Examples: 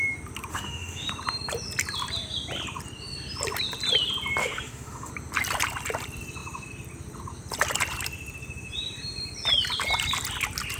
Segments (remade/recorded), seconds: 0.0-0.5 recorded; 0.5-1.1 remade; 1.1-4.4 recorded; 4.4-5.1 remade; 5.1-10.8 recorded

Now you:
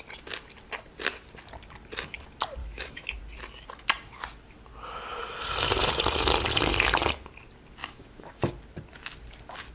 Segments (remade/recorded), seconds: 0.0-2.6 recorded; 2.6-3.2 remade; 3.2-7.8 recorded; 7.8-8.5 remade; 8.5-9.7 recorded

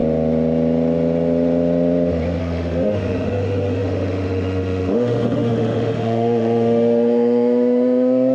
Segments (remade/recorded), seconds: 0.0-2.4 recorded; 2.4-8.3 remade

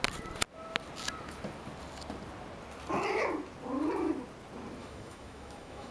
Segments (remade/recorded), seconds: 0.0-4.8 recorded; 4.8-5.9 remade

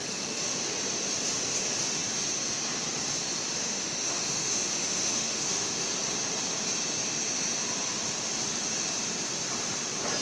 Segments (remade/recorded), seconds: 0.0-3.6 recorded; 3.6-6.0 remade; 6.0-10.2 recorded

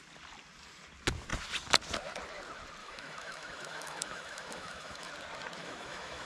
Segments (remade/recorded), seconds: 0.0-2.8 recorded; 2.8-5.1 remade; 5.1-5.6 recorded; 5.6-6.3 remade

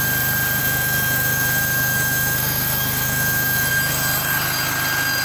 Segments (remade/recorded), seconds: 0.0-0.6 recorded; 0.6-3.7 remade; 3.7-5.2 recorded

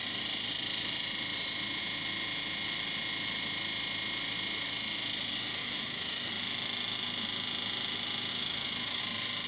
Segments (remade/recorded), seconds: 0.0-5.6 recorded; 5.6-6.3 remade; 6.3-8.3 recorded; 8.3-9.0 remade; 9.0-9.5 recorded